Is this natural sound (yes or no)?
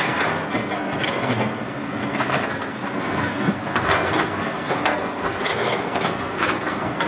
no